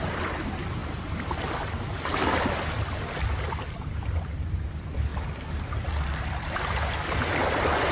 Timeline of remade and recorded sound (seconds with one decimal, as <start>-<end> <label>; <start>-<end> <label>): 0.0-7.9 recorded